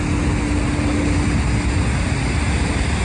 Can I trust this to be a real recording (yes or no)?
yes